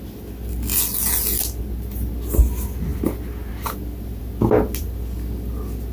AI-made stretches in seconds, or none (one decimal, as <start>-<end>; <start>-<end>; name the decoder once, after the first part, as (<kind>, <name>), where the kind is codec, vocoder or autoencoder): none